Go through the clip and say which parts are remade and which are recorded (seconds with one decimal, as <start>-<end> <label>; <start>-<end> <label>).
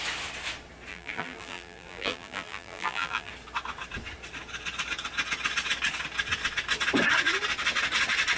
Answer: 0.0-0.9 recorded; 0.9-3.3 remade; 3.3-8.4 recorded